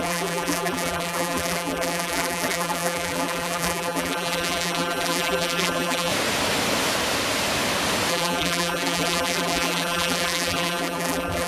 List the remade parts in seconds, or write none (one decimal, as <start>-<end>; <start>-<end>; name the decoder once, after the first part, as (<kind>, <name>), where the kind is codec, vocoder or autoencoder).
0.0-6.1 (vocoder, BigVGAN v2); 8.1-11.5